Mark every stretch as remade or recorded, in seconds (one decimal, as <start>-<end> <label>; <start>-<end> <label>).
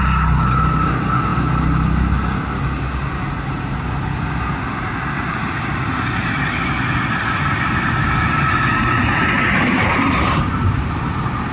0.0-11.5 recorded